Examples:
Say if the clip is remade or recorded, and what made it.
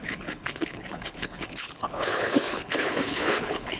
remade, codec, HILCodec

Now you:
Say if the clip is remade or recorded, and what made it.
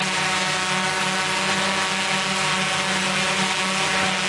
recorded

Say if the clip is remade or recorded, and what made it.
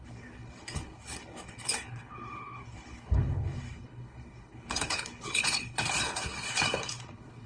remade, codec, HILCodec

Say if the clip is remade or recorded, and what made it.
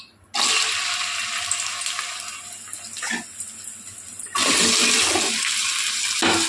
recorded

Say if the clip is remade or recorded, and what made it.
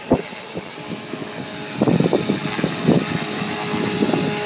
recorded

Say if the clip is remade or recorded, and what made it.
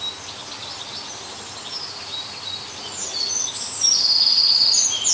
recorded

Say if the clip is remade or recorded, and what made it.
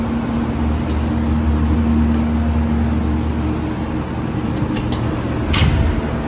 recorded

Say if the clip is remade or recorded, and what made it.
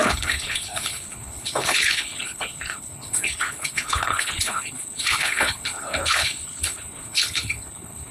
remade, codec, HILCodec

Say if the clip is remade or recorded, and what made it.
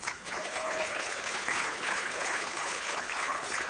remade, codec, HILCodec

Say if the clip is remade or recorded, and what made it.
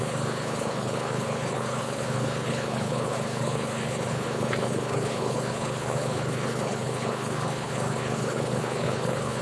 remade, codec, HILCodec